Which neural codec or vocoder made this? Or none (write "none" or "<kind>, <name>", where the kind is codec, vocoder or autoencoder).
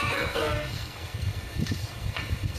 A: codec, SNAC